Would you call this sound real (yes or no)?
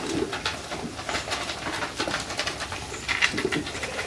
yes